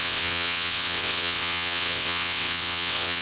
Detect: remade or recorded remade